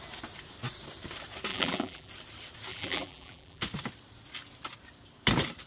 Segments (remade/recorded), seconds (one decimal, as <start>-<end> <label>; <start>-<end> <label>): 0.0-1.5 recorded; 1.5-2.1 remade; 2.1-2.7 recorded; 2.7-3.6 remade; 3.6-5.7 recorded